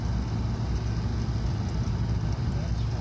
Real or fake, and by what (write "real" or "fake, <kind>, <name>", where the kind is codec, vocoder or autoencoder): real